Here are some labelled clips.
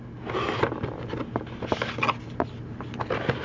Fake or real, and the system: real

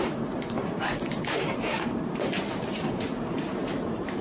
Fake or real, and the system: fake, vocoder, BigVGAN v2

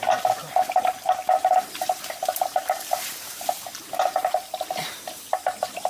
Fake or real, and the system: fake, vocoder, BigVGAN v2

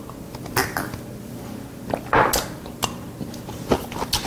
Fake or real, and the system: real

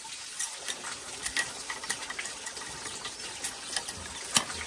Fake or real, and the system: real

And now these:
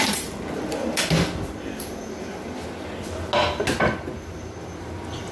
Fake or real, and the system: real